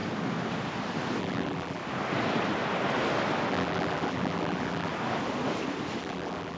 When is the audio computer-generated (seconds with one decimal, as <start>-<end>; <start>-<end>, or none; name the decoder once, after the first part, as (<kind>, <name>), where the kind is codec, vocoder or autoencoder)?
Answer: 1.2-1.8 (vocoder, BigVGAN v2); 3.5-4.9; 6.0-6.6

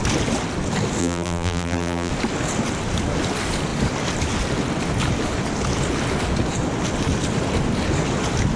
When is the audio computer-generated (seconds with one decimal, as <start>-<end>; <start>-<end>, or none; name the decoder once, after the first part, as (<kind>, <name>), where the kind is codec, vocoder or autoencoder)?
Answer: 1.0-2.1 (vocoder, BigVGAN v2)

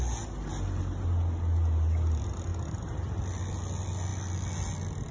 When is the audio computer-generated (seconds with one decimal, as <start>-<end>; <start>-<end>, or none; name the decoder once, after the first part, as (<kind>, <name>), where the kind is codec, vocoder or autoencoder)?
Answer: 2.5-3.2 (vocoder, BigVGAN v2)

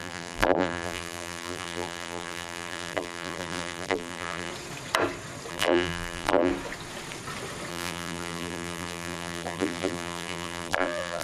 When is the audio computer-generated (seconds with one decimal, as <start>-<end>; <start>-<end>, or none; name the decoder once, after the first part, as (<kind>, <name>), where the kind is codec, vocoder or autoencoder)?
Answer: 0.0-4.5 (vocoder, BigVGAN v2); 5.5-6.5; 7.7-11.2

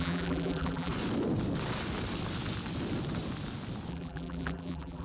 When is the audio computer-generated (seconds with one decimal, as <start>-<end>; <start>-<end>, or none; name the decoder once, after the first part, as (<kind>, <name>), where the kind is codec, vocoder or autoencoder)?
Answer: 0.0-0.9 (vocoder, BigVGAN v2); 3.9-5.0

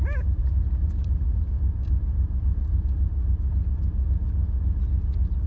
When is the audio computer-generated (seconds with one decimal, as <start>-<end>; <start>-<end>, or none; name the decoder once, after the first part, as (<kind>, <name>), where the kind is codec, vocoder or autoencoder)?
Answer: 0.4-1.4 (vocoder, BigVGAN v2)

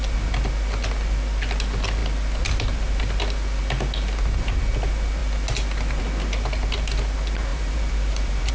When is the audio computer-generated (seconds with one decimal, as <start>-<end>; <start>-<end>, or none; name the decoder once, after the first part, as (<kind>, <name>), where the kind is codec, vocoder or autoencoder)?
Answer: 7.5-8.5 (vocoder, BigVGAN v2)